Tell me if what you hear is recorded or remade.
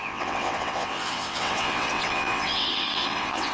remade